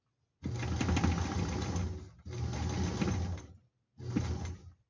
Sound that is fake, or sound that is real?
real